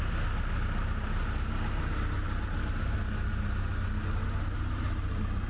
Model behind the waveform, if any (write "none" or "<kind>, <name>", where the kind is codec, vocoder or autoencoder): none